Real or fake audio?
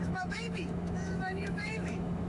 fake